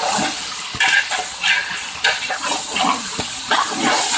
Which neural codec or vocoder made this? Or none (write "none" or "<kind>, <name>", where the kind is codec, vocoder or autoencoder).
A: none